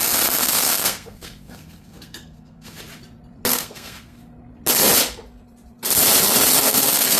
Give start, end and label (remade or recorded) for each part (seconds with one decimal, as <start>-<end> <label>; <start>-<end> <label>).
0.0-0.4 recorded; 0.4-2.8 remade; 2.8-3.5 recorded; 3.5-4.2 remade; 4.2-6.6 recorded; 6.6-7.2 remade